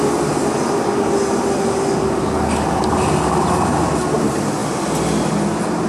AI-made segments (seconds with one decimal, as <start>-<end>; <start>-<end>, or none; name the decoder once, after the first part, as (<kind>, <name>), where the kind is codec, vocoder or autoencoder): none